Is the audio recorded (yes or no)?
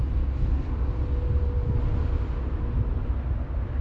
yes